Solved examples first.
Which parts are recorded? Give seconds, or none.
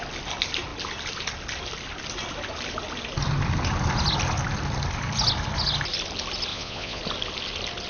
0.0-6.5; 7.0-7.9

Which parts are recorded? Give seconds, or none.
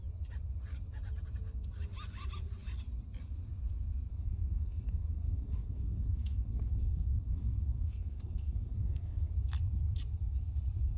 0.0-4.1; 9.3-11.0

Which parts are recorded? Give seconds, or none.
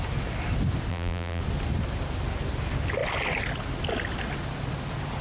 0.0-0.9; 1.4-5.2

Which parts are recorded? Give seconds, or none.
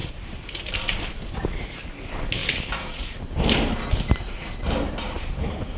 0.7-2.4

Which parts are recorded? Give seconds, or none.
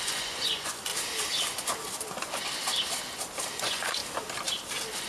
0.9-3.6; 4.0-5.1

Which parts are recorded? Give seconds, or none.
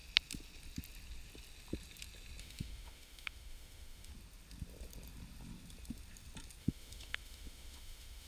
0.0-2.4; 4.1-6.6